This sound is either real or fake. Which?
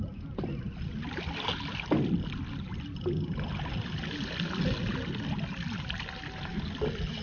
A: real